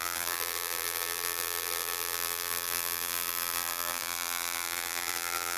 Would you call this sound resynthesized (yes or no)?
yes